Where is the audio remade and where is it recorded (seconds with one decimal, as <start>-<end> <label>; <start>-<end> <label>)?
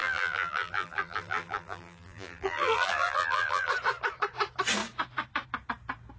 0.0-3.7 remade; 3.7-6.2 recorded